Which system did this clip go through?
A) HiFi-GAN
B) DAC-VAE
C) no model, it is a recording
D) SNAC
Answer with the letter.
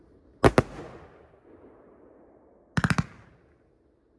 C